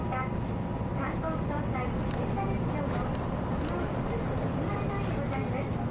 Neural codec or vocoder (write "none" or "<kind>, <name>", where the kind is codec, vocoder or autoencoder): none